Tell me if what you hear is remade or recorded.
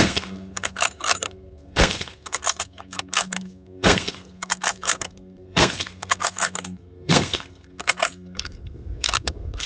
remade